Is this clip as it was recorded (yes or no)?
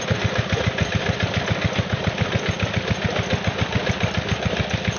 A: yes